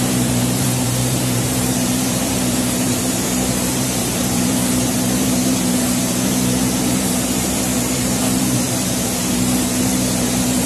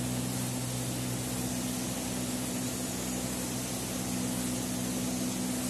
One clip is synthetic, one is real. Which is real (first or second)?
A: second